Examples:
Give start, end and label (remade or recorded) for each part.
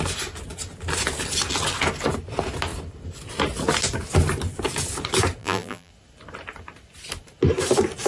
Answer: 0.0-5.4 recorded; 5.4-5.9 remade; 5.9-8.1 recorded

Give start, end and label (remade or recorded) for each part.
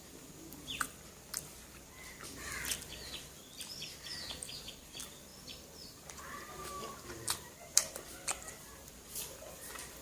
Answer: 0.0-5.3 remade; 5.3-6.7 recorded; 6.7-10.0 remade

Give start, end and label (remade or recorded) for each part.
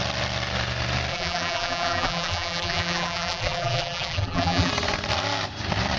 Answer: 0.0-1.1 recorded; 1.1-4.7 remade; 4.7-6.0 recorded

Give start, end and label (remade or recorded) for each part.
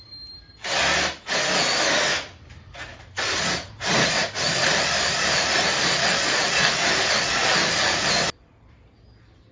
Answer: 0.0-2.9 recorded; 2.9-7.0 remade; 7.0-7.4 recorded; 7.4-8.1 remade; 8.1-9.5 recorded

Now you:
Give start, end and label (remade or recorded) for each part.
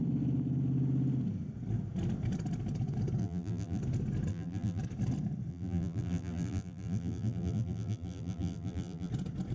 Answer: 0.0-3.2 recorded; 3.2-3.8 remade; 3.8-4.3 recorded; 4.3-4.8 remade; 4.8-5.5 recorded; 5.5-9.1 remade; 9.1-9.5 recorded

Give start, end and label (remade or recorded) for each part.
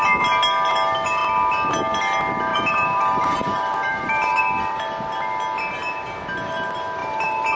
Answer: 0.0-2.5 recorded; 2.5-4.4 remade; 4.4-7.0 recorded; 7.0-7.6 remade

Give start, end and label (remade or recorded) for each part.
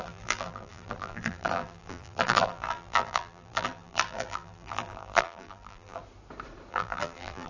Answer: 0.0-6.0 remade; 6.0-6.7 recorded; 6.7-7.5 remade